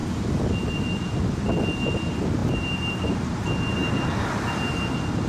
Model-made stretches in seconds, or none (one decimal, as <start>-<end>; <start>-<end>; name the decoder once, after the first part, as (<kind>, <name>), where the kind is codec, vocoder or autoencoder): 2.4-3.3 (vocoder, BigVGAN v2)